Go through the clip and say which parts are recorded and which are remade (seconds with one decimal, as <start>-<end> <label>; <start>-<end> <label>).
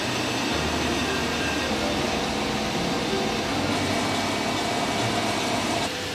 0.0-1.6 remade; 1.6-5.1 recorded; 5.1-6.1 remade